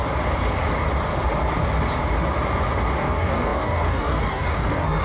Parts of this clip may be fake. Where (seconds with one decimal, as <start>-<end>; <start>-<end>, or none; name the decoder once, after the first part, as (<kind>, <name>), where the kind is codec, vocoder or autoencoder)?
3.0-5.0 (codec, DAC)